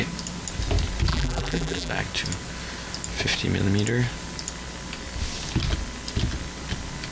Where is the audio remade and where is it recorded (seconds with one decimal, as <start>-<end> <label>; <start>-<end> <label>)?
0.0-1.1 recorded; 1.1-1.9 remade; 1.9-7.1 recorded